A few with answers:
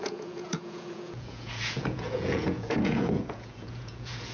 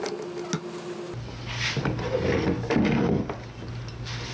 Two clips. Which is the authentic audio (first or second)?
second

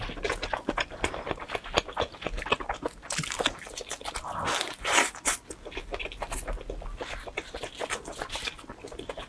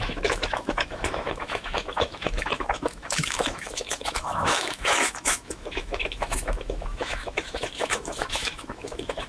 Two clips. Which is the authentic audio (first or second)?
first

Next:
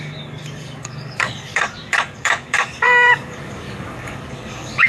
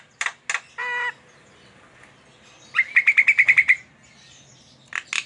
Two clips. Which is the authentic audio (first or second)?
second